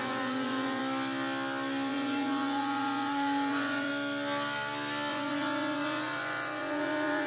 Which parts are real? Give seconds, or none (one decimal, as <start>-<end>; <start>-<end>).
0.8-1.9; 3.9-5.1